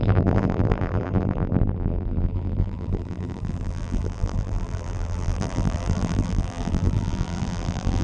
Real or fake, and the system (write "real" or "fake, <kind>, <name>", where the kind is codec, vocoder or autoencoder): fake, vocoder, BigVGAN v2